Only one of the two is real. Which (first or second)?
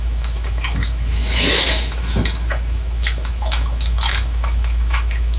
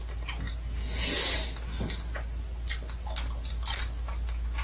second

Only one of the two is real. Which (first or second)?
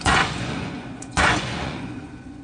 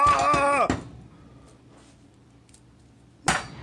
second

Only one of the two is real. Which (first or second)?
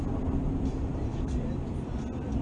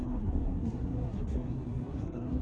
first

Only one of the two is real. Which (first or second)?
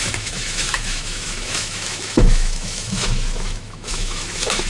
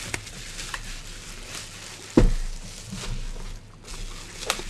second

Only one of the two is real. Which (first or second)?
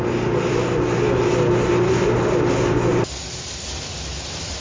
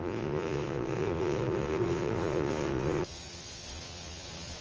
first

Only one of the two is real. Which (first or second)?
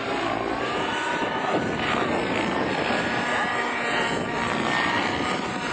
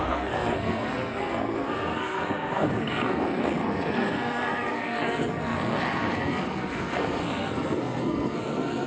first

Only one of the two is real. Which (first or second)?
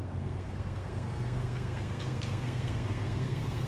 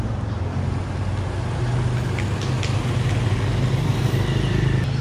second